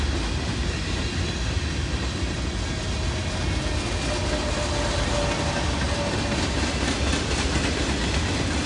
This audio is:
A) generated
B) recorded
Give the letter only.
B